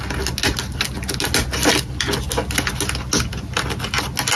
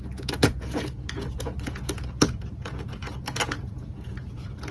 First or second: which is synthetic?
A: second